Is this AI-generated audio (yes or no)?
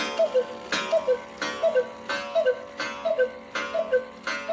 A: no